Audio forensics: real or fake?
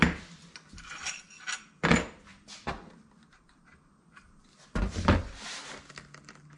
real